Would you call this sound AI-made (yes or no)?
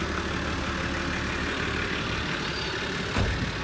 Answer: no